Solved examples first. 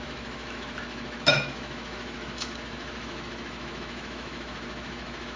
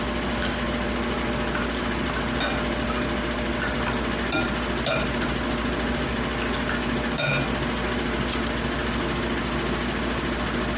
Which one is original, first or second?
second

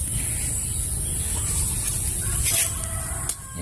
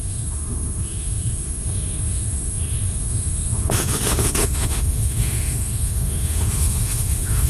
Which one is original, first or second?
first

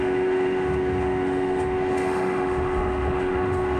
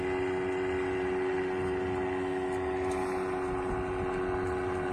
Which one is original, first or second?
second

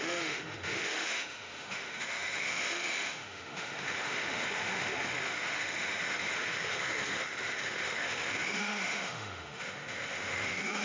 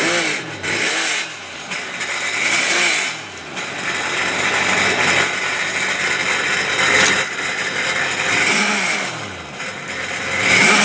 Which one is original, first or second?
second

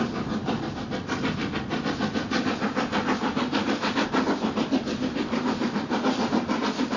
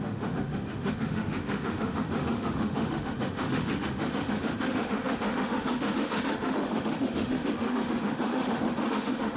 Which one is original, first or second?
first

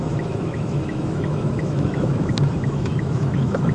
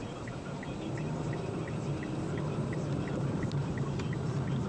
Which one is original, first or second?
second